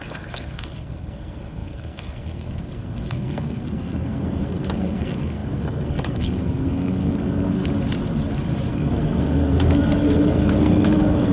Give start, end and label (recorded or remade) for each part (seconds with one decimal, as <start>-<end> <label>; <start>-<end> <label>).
0.0-7.6 remade; 7.6-8.7 recorded; 8.7-11.3 remade